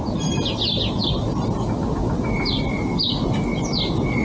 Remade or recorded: recorded